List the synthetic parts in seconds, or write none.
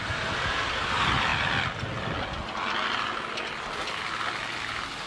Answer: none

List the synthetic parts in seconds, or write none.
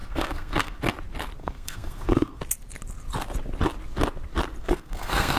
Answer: 0.0-0.8 (codec, SNAC); 1.4-2.4; 4.6-5.4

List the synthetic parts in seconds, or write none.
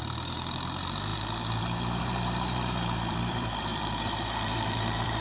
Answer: 0.0-5.2 (vocoder, BigVGAN v2)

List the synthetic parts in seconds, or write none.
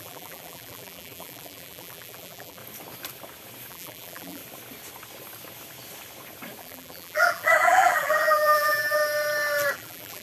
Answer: 0.0-2.6 (vocoder, BigVGAN v2); 3.7-4.4; 6.6-9.0; 9.7-10.2